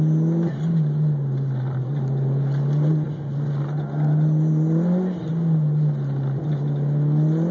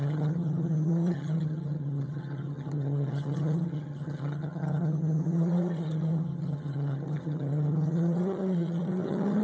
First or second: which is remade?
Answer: second